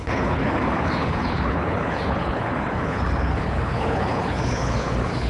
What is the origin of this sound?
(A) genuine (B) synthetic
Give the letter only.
B